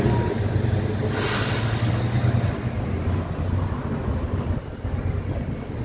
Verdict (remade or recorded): recorded